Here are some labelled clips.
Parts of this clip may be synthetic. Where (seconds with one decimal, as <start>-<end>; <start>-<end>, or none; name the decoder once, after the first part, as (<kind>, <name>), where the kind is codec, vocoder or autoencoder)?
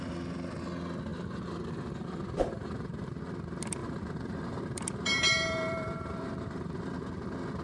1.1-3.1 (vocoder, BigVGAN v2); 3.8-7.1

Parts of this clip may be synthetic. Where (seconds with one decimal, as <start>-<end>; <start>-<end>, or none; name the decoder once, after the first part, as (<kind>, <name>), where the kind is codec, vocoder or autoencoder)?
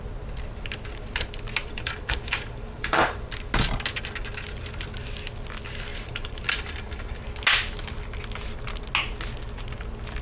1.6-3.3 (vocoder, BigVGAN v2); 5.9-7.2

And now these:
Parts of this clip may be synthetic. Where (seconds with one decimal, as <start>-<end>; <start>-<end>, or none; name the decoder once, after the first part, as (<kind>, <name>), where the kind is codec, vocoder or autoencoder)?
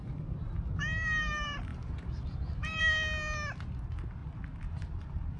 0.0-0.7 (vocoder, BigVGAN v2); 1.7-2.8; 4.2-5.4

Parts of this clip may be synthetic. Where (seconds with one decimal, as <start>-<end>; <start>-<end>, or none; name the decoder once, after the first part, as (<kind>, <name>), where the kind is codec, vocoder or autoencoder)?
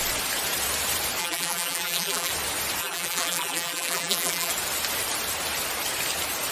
1.2-2.3 (vocoder, BigVGAN v2); 2.8-4.5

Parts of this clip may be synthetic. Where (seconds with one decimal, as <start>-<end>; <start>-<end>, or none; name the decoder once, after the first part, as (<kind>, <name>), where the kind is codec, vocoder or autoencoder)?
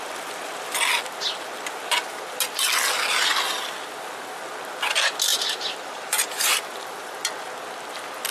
5.3-7.1 (vocoder, BigVGAN v2)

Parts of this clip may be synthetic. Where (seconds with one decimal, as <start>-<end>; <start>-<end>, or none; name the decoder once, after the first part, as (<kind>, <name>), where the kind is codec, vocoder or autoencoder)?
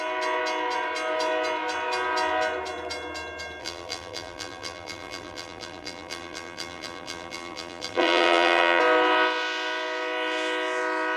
3.6-8.8 (vocoder, BigVGAN v2)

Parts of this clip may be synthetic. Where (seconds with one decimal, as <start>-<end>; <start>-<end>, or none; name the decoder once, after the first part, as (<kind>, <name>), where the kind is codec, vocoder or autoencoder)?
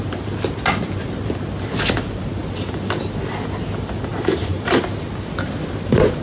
2.4-3.0 (vocoder, BigVGAN v2); 4.1-6.2